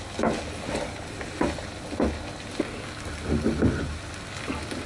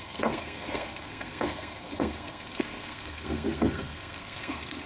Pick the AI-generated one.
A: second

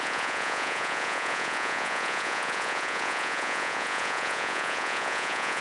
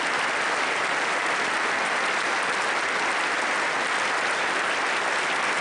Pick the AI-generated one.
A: first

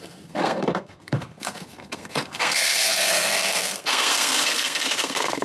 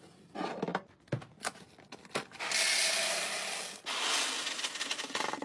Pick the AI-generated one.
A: first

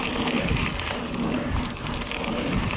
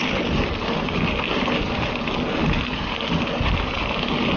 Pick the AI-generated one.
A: first